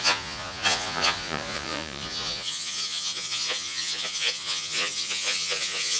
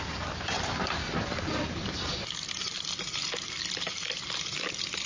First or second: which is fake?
first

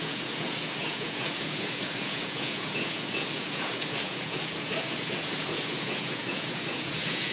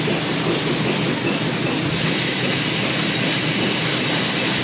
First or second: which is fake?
first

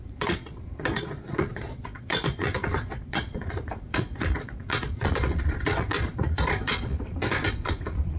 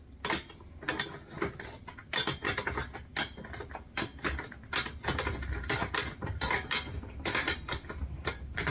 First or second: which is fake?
first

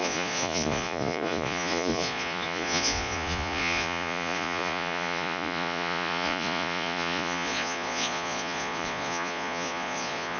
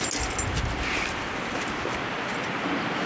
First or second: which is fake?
first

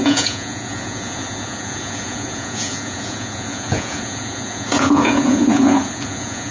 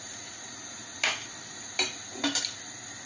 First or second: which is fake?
first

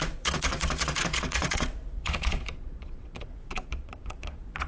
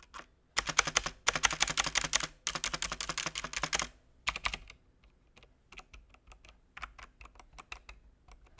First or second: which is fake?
first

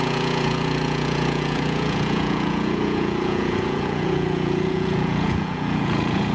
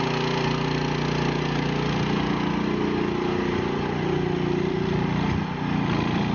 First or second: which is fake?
first